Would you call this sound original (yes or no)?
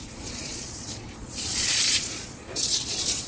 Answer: no